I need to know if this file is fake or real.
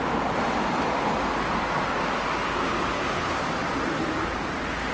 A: real